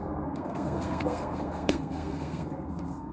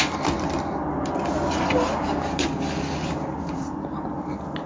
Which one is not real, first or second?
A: first